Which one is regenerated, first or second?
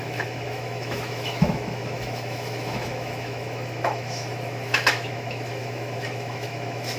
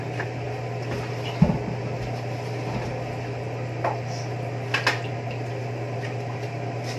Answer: first